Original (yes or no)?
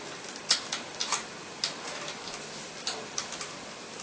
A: yes